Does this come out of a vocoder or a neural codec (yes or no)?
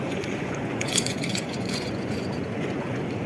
yes